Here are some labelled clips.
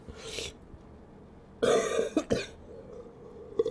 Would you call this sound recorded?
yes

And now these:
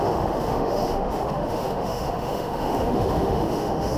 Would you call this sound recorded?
no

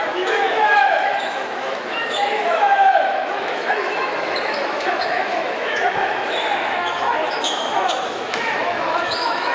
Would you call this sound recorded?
no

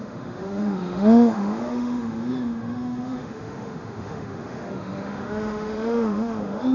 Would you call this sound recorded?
no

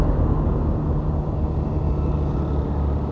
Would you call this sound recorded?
yes